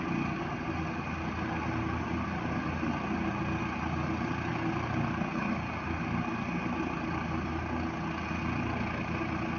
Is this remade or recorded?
recorded